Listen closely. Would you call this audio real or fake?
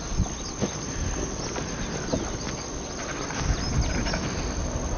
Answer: real